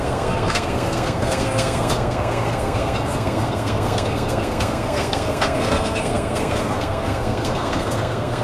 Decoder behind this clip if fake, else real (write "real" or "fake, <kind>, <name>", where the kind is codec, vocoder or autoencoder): fake, codec, SNAC